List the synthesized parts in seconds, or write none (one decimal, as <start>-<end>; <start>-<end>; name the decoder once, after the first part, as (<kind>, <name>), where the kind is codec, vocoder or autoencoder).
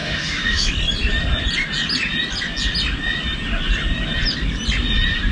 0.0-0.7 (autoencoder, DAC-VAE)